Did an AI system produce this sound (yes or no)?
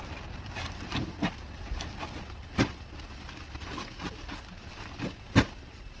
no